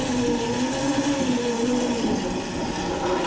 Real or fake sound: real